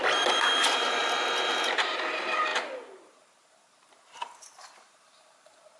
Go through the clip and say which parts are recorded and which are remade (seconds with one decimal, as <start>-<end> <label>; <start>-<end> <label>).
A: 0.0-1.0 remade; 1.0-1.6 recorded; 1.6-5.8 remade